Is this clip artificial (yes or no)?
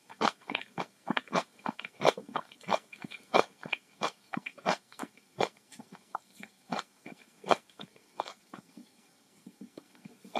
yes